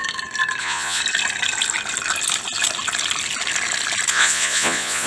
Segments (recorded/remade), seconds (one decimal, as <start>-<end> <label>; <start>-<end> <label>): 0.0-0.6 recorded; 0.6-1.0 remade; 1.0-4.1 recorded; 4.1-5.1 remade